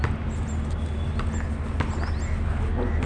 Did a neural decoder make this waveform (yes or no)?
no